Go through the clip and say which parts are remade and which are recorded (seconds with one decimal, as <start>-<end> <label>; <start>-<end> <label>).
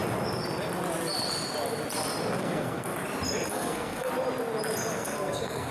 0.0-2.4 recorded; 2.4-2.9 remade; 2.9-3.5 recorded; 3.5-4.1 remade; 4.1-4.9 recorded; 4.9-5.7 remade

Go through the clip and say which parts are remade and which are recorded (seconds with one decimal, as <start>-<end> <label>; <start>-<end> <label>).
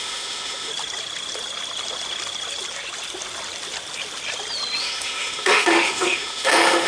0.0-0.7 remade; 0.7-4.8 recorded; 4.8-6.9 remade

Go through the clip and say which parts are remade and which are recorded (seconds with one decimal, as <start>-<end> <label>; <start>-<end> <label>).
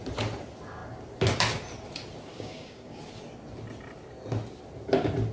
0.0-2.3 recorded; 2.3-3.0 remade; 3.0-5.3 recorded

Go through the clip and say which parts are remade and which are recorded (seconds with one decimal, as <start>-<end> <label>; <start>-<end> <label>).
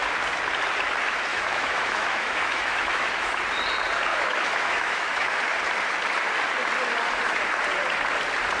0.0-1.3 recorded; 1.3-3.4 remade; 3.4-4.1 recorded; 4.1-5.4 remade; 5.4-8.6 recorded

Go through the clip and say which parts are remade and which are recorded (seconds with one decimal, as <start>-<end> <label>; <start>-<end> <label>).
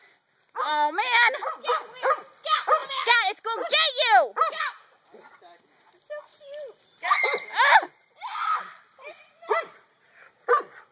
0.0-10.9 recorded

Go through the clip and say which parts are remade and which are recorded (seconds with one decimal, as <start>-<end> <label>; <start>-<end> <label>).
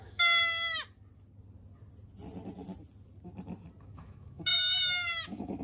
0.0-0.4 remade; 0.4-3.8 recorded; 3.8-5.6 remade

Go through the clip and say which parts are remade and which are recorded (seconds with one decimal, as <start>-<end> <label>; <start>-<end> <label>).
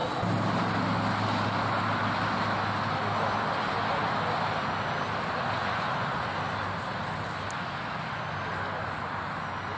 0.0-5.6 recorded; 5.6-6.3 remade; 6.3-9.8 recorded